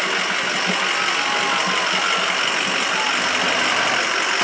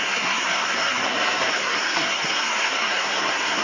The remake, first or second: second